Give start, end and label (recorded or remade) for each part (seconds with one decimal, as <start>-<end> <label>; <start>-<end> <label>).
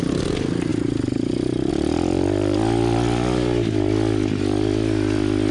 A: 0.0-0.7 recorded; 0.7-1.7 remade; 1.7-5.5 recorded